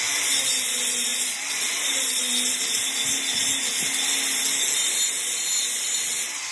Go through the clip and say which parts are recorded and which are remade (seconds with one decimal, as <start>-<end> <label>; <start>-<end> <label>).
0.0-6.5 recorded